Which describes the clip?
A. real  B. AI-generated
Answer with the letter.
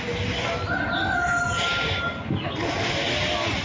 A